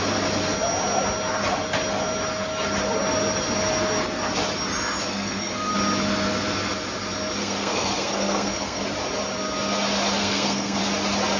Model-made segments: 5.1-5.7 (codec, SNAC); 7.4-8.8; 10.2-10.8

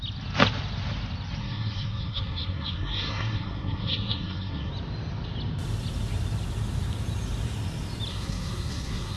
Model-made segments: 1.4-4.7 (codec, SNAC); 8.1-9.2